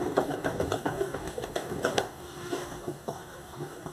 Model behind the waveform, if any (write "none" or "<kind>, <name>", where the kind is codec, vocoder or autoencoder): codec, DAC